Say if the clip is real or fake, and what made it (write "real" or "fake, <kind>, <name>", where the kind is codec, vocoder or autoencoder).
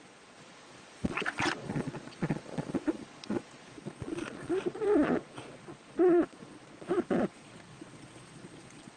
fake, vocoder, Vocos